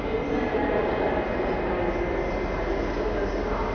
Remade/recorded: recorded